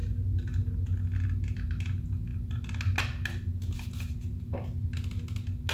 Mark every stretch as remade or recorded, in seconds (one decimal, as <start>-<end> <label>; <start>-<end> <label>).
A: 0.0-5.7 recorded